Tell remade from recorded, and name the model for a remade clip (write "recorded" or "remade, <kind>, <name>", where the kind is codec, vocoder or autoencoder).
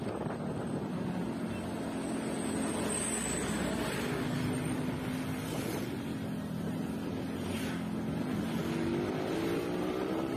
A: recorded